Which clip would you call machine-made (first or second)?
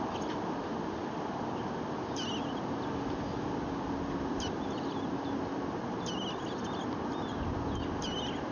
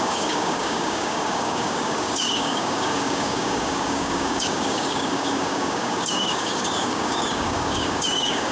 second